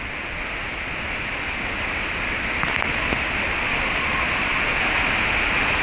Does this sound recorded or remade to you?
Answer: recorded